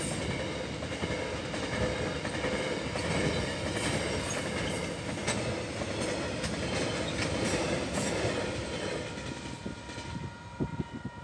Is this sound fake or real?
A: real